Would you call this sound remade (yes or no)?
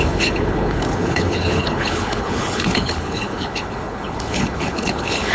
yes